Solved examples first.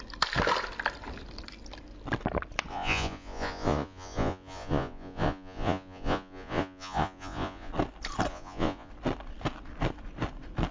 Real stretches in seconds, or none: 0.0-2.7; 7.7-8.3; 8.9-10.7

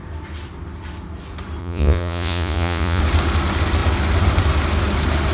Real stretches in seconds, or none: 0.0-1.6; 3.0-5.3

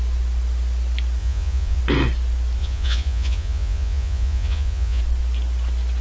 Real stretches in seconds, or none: 0.0-1.2; 1.8-2.6; 5.0-6.0

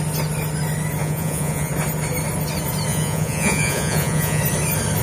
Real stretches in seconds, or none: 0.0-1.0; 1.7-2.9; 4.4-5.0

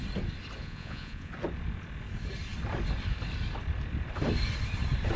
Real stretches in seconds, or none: 0.0-0.6; 1.3-5.2

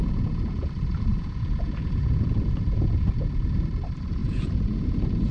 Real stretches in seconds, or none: 0.7-1.1; 3.4-4.2